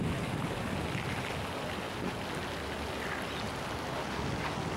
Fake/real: real